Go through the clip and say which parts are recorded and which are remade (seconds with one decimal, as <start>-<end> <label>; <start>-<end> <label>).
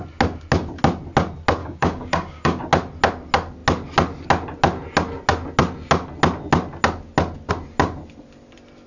0.0-1.6 recorded; 1.6-2.6 remade; 2.6-8.9 recorded